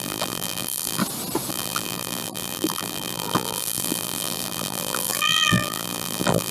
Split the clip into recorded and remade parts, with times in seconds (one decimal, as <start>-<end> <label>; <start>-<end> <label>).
0.0-1.0 remade; 1.0-1.5 recorded; 1.5-6.5 remade